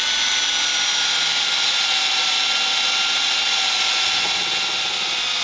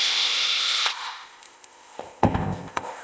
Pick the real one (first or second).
first